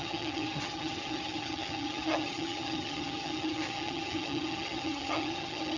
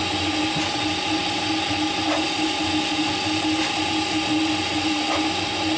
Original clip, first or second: second